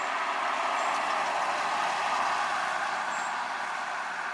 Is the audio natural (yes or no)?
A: yes